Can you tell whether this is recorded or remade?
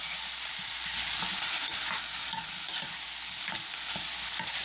recorded